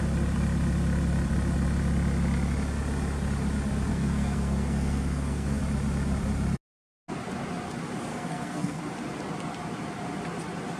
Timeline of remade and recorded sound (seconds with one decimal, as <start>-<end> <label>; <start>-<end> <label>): 0.0-3.9 recorded; 3.9-5.6 remade; 5.6-8.1 recorded; 8.1-8.8 remade; 8.8-10.8 recorded

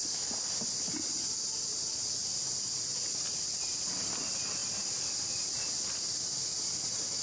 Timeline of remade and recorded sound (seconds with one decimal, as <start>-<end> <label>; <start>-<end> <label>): 0.0-4.6 recorded; 4.6-6.0 remade; 6.0-7.2 recorded

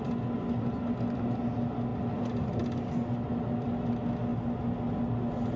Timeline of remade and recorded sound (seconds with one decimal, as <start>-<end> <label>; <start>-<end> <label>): 0.0-5.6 recorded

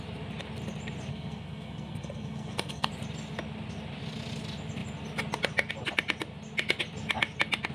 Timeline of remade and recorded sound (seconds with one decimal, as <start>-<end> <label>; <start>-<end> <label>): 0.0-1.1 recorded; 1.1-2.9 remade; 2.9-7.7 recorded

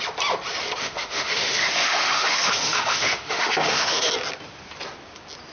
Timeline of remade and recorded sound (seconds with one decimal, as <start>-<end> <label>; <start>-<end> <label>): 0.0-0.8 recorded; 0.8-4.1 remade; 4.1-5.5 recorded

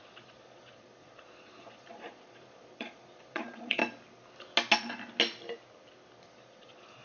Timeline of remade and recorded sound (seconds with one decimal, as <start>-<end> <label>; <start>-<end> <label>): 0.0-3.8 remade; 3.8-6.2 recorded; 6.2-7.0 remade